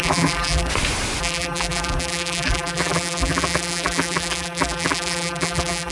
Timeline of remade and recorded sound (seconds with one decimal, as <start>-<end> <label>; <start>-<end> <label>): 0.0-0.7 remade; 0.7-1.2 recorded; 1.2-5.9 remade